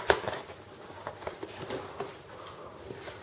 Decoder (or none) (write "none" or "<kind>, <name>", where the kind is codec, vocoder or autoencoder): none